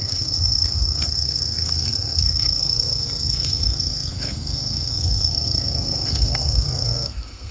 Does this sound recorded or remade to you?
remade